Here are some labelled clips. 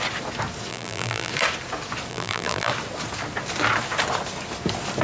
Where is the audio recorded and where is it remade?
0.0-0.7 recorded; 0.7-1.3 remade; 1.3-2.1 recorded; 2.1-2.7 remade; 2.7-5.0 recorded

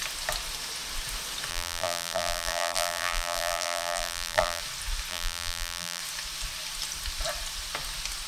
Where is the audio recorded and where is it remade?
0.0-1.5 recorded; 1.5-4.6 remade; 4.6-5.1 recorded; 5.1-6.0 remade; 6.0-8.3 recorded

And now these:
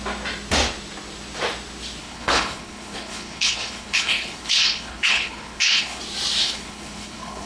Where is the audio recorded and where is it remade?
0.0-2.0 recorded; 2.0-6.0 remade; 6.0-6.4 recorded; 6.4-7.5 remade

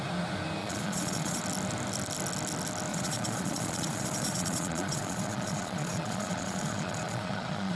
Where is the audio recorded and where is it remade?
0.0-0.6 recorded; 0.6-1.4 remade; 1.4-2.9 recorded; 2.9-7.8 remade